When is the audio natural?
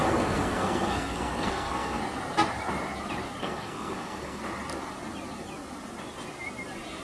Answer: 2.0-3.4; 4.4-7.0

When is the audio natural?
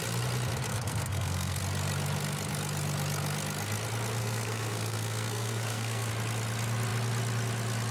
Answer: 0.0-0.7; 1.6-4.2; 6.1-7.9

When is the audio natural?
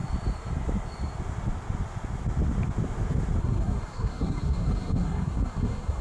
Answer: 0.0-3.4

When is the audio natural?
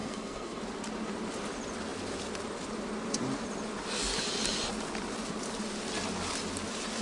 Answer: 0.6-7.0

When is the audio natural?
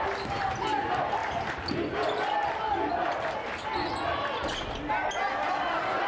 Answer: 0.0-6.1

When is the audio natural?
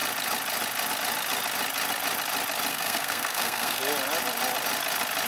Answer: 0.0-2.7; 3.8-5.3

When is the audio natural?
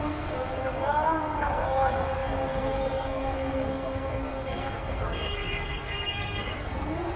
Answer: none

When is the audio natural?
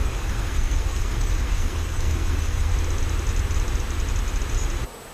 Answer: 2.7-5.1